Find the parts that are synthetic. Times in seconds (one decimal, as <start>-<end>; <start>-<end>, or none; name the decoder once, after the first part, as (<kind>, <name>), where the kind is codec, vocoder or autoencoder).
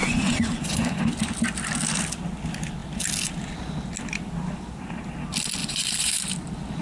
0.0-1.0 (vocoder, Vocos); 5.6-6.2